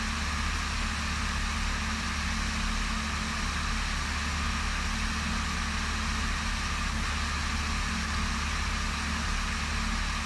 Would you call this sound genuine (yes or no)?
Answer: yes